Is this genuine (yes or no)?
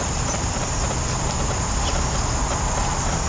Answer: yes